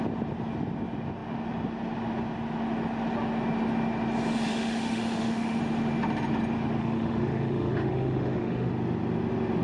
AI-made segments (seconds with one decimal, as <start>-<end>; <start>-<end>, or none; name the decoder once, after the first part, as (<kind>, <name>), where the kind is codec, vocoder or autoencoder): 4.5-5.6 (autoencoder, DAC-VAE); 6.8-8.7